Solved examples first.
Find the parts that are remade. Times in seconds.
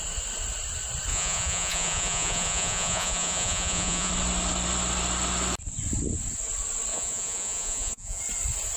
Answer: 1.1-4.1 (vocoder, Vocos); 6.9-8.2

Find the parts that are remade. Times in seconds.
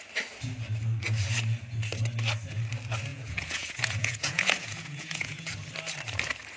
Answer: 3.1-5.5 (vocoder, Vocos)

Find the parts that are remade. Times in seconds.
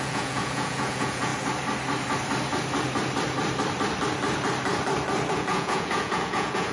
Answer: 0.0-1.3 (vocoder, Vocos); 5.3-6.7